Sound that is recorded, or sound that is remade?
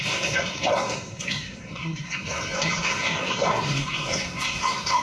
remade